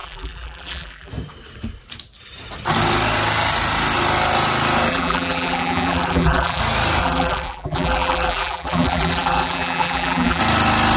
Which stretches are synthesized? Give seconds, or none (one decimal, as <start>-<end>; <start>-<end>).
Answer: 0.0-1.1; 4.9-6.6; 7.0-10.4